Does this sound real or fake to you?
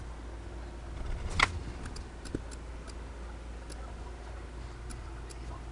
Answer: real